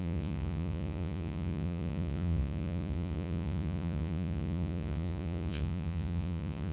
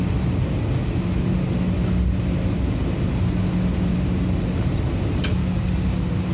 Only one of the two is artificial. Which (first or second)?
first